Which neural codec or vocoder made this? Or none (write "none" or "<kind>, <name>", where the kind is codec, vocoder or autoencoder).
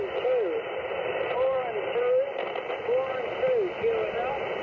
none